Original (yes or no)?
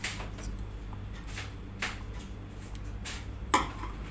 yes